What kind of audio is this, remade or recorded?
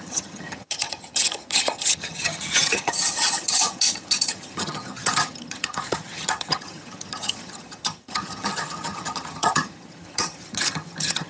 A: remade